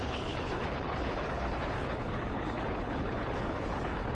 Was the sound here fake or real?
fake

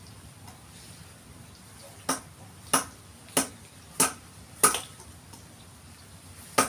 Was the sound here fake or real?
real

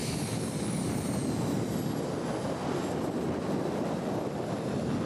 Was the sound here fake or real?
real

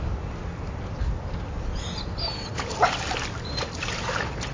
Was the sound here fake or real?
real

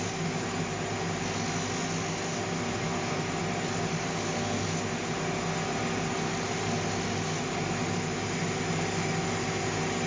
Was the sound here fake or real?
real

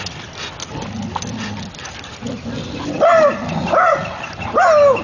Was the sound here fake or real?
real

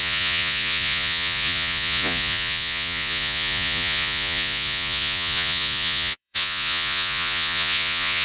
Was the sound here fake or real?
fake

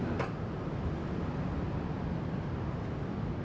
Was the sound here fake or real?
real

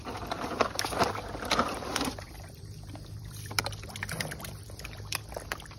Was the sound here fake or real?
fake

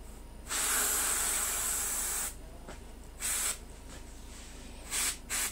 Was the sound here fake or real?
real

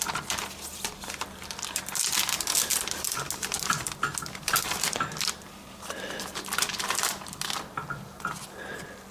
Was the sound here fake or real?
real